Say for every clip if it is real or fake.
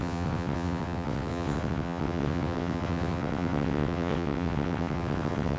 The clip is fake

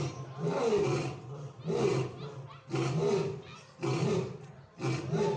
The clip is real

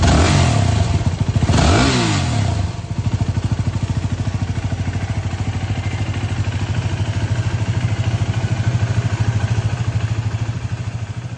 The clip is real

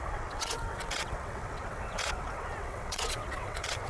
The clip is fake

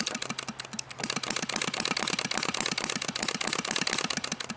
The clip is real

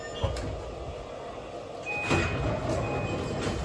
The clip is real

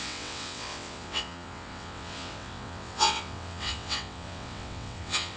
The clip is fake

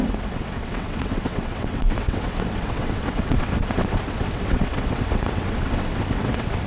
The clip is fake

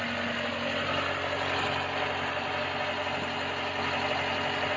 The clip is real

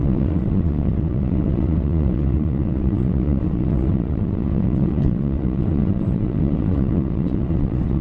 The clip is fake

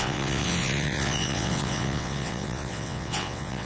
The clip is fake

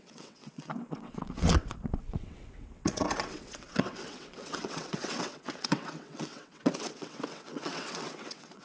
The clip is fake